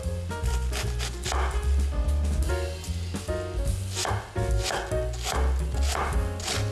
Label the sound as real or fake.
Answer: real